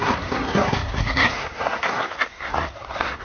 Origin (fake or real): fake